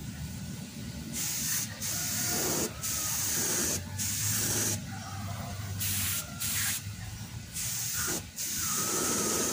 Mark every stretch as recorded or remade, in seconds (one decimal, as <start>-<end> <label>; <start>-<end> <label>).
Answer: 0.0-0.6 remade; 0.6-4.8 recorded; 4.8-7.3 remade; 7.3-9.5 recorded

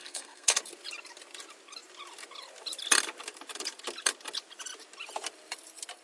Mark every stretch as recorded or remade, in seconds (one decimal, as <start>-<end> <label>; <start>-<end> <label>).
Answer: 0.0-0.6 remade; 0.6-6.0 recorded

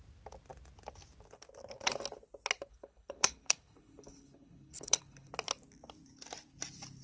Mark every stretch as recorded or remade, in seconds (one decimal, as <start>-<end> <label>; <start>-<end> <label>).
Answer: 0.0-2.7 recorded; 2.7-5.3 remade; 5.3-7.0 recorded

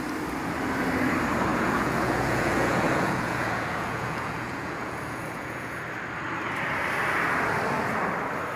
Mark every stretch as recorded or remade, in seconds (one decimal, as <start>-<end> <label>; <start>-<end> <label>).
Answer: 0.0-1.5 recorded; 1.5-5.8 remade; 5.8-8.6 recorded

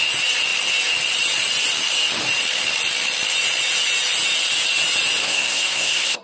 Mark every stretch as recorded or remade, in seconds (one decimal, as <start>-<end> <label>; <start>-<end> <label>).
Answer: 0.0-5.2 recorded; 5.2-6.2 remade

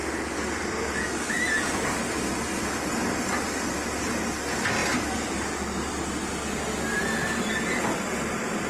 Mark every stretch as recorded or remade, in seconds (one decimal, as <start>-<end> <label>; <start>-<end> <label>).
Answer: 0.0-8.7 recorded

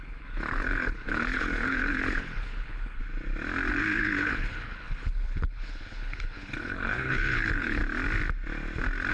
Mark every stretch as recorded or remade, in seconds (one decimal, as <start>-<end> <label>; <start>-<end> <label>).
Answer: 0.0-3.0 remade; 3.0-3.7 recorded; 3.7-7.8 remade; 7.8-9.1 recorded

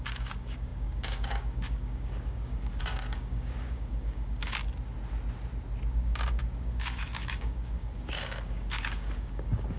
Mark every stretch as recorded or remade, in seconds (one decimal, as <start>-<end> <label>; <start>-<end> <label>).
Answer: 0.0-4.6 remade; 4.6-5.9 recorded; 5.9-9.8 remade